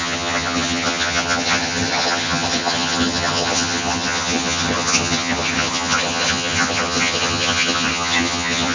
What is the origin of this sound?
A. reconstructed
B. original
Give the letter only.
A